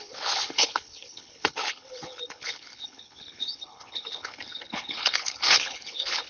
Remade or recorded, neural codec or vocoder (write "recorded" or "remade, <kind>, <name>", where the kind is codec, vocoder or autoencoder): remade, codec, HILCodec